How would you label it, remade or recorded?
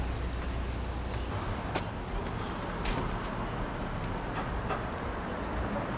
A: recorded